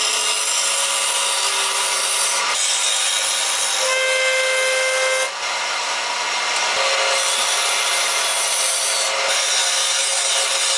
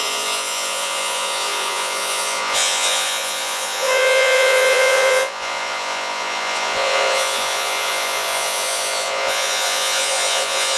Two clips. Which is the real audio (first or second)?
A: first